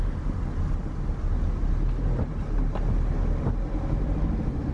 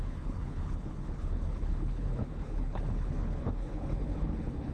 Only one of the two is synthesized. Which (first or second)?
second